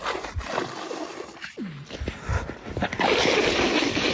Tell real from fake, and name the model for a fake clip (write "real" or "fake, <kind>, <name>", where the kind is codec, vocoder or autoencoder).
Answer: real